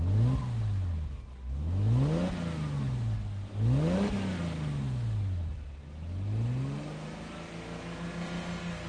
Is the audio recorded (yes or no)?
yes